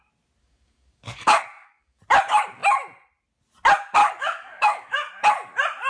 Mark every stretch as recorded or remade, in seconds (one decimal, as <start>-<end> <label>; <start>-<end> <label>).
0.0-0.4 recorded; 0.4-2.0 remade; 2.0-4.0 recorded; 4.0-5.1 remade; 5.1-5.9 recorded